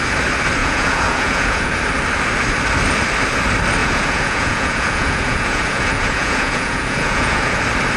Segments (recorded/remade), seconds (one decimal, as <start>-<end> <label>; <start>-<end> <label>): 0.0-0.6 recorded; 0.6-1.8 remade; 1.8-3.8 recorded; 3.8-7.6 remade; 7.6-8.0 recorded